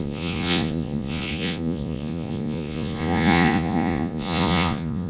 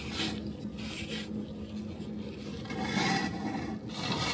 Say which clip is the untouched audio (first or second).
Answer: second